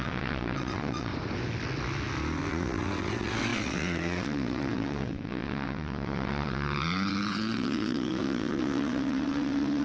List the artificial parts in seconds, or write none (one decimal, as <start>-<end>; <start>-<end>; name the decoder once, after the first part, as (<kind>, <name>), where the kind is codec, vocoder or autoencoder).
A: 0.0-1.1 (vocoder, WaveNeXt); 2.5-9.8